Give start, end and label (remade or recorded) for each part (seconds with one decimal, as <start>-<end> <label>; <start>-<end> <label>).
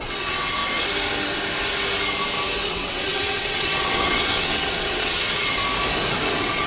0.0-0.6 remade; 0.6-2.7 recorded; 2.7-5.6 remade; 5.6-6.3 recorded; 6.3-6.7 remade